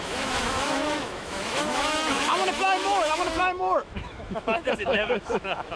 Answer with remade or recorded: remade